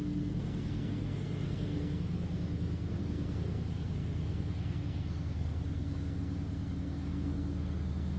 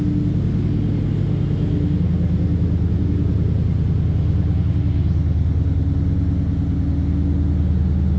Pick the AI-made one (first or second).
first